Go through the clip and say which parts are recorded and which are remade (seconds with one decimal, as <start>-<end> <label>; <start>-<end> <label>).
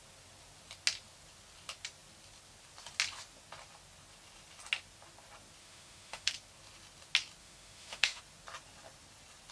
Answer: 0.0-5.6 recorded; 5.6-6.3 remade; 6.3-7.4 recorded; 7.4-8.2 remade; 8.2-9.5 recorded